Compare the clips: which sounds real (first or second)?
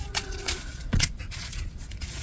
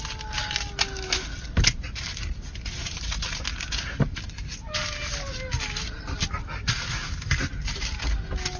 second